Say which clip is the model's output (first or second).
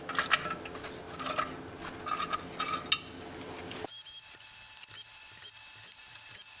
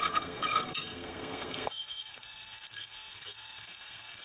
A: second